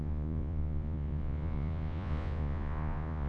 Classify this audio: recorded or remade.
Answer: remade